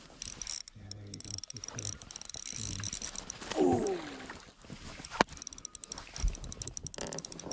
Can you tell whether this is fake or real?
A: real